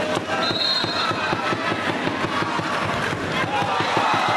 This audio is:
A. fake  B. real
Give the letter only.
B